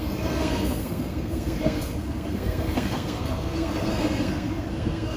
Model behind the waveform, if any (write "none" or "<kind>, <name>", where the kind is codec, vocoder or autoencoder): codec, SNAC